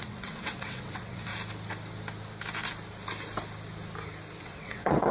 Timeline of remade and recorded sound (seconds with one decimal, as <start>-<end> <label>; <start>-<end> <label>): 0.0-1.3 remade; 1.3-4.4 recorded; 4.4-5.1 remade